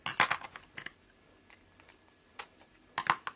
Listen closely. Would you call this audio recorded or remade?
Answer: recorded